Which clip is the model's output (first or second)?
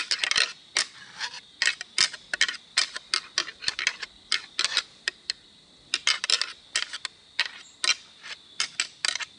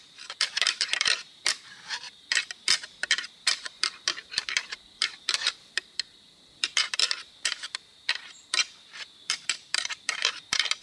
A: second